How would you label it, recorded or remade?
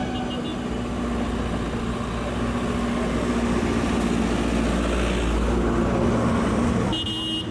recorded